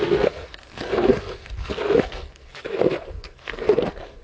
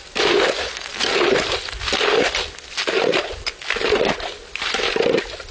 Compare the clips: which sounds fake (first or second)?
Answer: first